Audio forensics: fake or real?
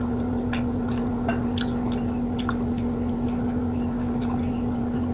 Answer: real